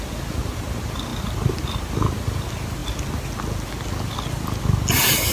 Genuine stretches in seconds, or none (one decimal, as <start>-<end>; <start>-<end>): 0.0-1.1; 1.8-5.3